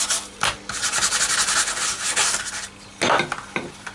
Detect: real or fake real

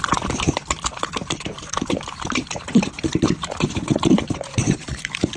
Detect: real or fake fake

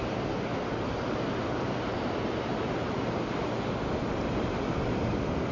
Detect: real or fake real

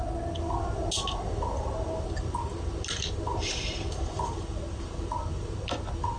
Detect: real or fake real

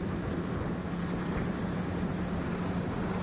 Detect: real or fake real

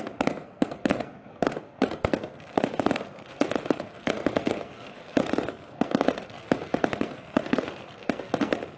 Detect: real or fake fake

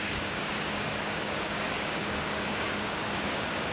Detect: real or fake fake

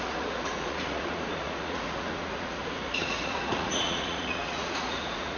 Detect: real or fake fake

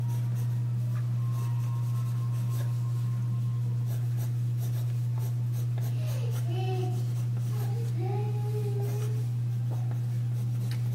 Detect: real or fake real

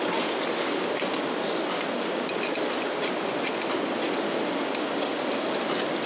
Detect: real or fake real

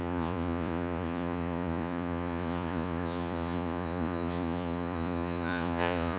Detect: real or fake fake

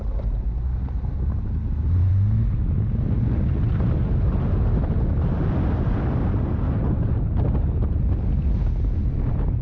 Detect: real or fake real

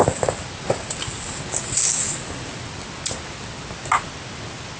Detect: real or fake real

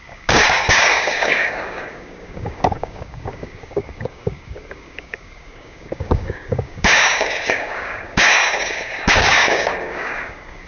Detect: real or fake fake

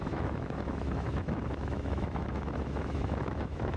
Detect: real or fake fake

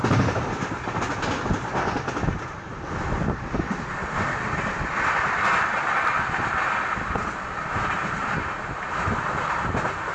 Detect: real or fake real